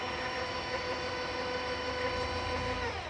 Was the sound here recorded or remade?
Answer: recorded